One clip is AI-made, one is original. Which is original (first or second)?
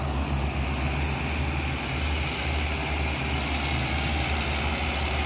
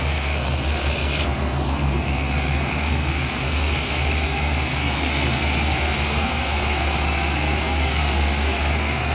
first